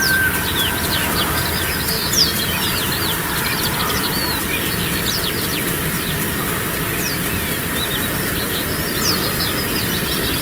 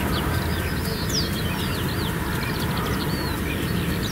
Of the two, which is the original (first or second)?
second